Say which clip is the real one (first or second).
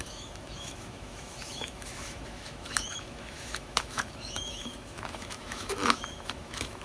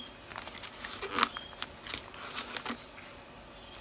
second